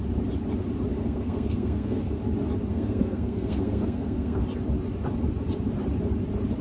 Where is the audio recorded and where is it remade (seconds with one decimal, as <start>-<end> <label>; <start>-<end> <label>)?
0.0-0.9 recorded; 0.9-2.2 remade; 2.2-2.7 recorded; 2.7-4.4 remade; 4.4-6.6 recorded